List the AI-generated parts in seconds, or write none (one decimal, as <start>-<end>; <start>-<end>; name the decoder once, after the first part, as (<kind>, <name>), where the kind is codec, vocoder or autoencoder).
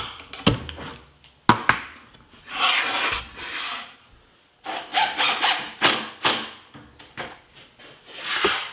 none